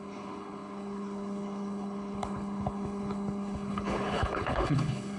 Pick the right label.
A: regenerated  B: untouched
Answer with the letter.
A